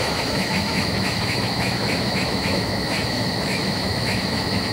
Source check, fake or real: fake